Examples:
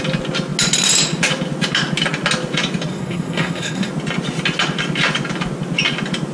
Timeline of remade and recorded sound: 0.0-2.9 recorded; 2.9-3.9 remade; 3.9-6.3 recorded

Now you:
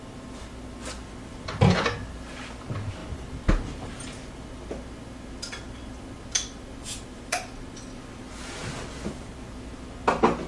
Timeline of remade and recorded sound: 0.0-10.5 recorded

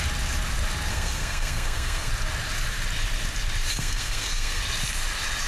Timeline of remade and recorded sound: 0.0-0.9 recorded; 0.9-2.1 remade; 2.1-3.7 recorded; 3.7-4.6 remade; 4.6-5.5 recorded

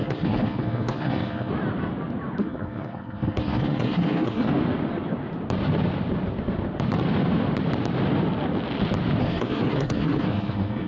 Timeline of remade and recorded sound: 0.0-1.5 remade; 1.5-2.4 recorded; 2.4-4.5 remade; 4.5-9.2 recorded; 9.2-10.9 remade